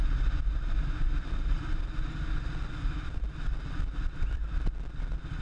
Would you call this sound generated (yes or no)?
no